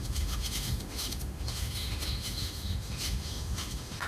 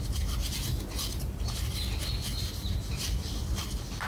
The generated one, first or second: first